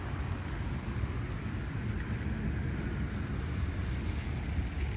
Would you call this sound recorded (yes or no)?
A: yes